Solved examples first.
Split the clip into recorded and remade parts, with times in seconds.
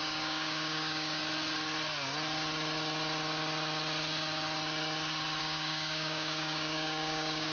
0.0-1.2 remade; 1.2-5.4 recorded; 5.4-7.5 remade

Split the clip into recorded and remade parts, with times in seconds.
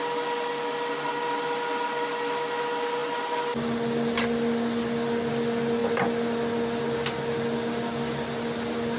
0.0-9.0 recorded